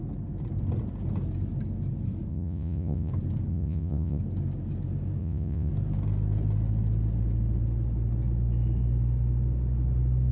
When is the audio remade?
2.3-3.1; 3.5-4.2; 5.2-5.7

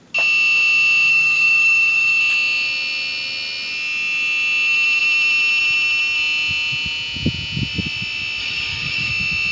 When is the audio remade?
1.1-2.2; 8.4-9.1

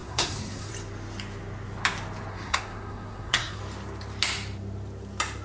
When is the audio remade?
0.0-0.7; 2.3-3.6

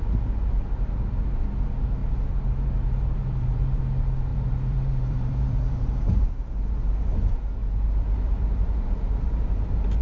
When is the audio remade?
2.0-3.8; 4.3-6.7; 7.6-10.0

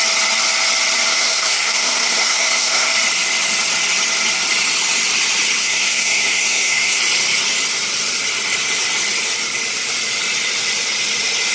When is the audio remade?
1.1-2.9; 5.6-7.0

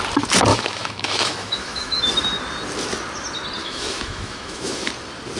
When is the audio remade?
0.5-2.0; 3.6-4.9

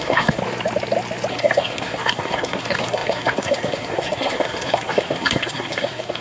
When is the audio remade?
0.0-0.4; 1.3-6.2

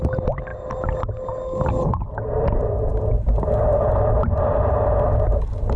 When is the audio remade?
none